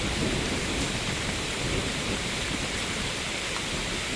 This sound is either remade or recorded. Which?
remade